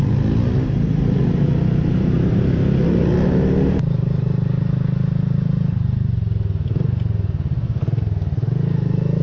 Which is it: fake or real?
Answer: real